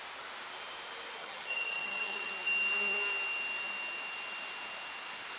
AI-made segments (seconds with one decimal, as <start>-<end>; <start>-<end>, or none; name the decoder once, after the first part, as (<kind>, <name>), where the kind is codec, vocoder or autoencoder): 1.2-2.3 (vocoder, HiFi-GAN)